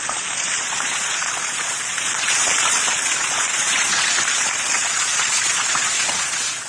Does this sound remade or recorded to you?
remade